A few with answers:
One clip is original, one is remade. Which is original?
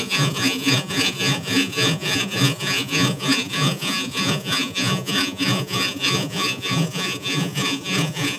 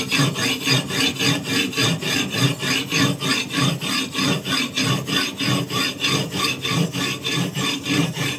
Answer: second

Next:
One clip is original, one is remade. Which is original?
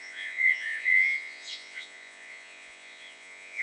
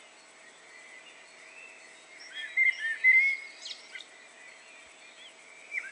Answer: second